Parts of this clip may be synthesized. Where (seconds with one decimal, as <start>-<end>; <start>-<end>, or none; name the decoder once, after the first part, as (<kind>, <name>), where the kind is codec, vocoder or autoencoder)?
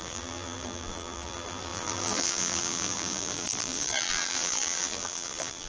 0.0-5.7 (vocoder, BigVGAN v2)